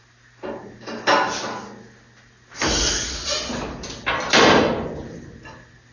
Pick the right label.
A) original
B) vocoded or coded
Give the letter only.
A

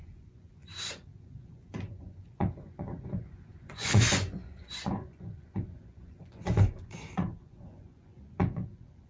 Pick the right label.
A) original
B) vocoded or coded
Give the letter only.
B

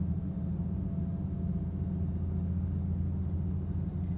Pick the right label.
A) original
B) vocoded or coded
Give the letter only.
A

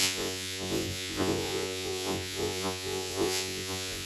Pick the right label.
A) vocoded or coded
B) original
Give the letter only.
A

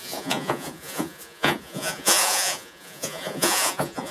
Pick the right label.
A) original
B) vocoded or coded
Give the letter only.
B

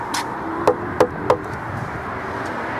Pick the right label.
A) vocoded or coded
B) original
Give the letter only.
B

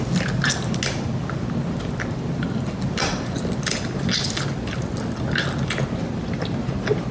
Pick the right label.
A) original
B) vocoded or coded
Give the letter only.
A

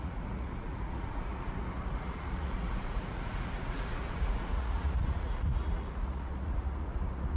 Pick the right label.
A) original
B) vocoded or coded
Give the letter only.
B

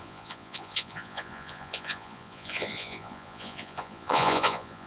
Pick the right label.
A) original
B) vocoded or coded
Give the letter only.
B